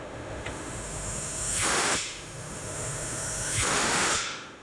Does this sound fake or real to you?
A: fake